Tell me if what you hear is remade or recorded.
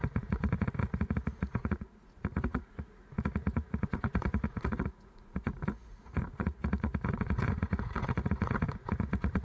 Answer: remade